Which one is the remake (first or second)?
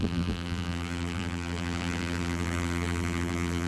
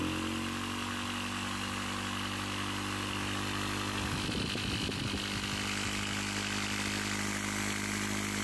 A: first